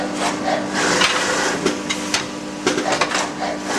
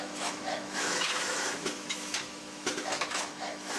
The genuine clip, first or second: first